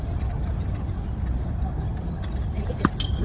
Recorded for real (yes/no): yes